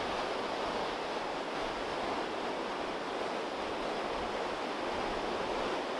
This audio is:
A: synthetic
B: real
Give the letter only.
B